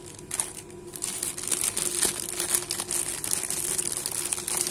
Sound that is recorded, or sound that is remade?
recorded